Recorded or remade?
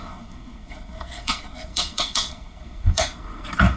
remade